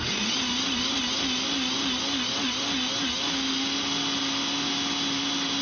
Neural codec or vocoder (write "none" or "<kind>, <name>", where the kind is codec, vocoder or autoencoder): none